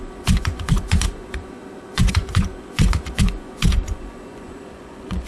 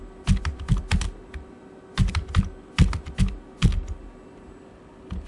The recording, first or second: second